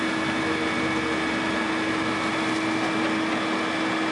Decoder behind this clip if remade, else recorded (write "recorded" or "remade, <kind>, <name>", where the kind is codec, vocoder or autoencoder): recorded